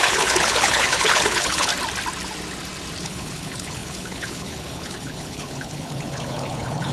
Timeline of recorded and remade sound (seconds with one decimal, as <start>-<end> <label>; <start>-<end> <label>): 0.0-1.7 remade; 1.7-3.0 recorded; 3.0-6.9 remade